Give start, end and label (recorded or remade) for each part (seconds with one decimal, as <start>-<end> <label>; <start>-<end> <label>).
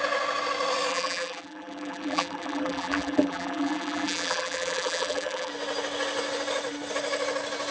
0.0-0.9 recorded; 0.9-5.5 remade; 5.5-7.7 recorded